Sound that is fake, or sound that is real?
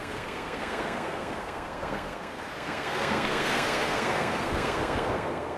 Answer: fake